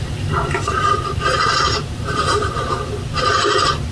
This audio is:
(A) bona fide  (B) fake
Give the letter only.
B